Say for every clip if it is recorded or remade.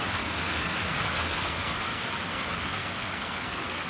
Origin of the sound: remade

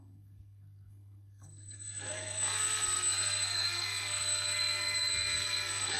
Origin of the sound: remade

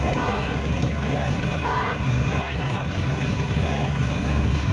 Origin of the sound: remade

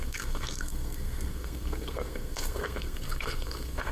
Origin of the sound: remade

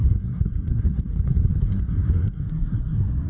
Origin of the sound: remade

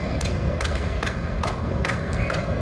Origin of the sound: remade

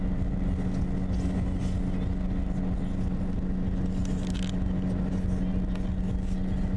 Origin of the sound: recorded